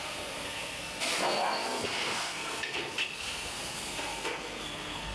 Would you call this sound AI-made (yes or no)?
yes